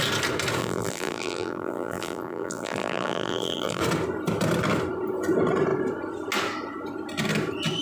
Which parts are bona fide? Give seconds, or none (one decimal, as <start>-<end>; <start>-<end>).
0.0-0.6; 3.8-7.8